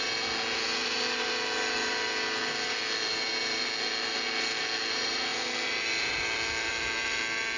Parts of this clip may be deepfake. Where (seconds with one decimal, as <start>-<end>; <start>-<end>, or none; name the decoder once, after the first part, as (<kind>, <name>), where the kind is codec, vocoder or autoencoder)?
none

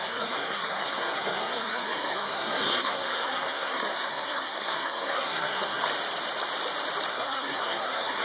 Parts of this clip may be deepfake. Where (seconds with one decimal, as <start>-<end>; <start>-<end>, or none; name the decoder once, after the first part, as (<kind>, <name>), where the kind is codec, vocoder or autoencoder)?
0.0-5.8 (codec, SNAC); 7.1-8.2